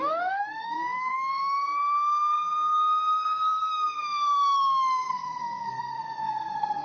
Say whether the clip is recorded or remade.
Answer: remade